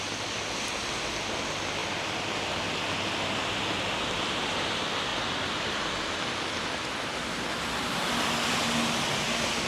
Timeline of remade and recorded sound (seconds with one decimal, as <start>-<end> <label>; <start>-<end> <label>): 0.0-9.7 recorded